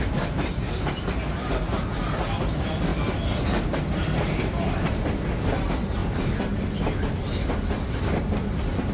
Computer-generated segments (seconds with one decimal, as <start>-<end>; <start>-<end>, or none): none